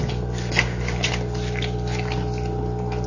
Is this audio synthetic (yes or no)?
no